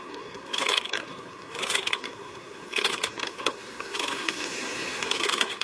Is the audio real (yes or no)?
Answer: no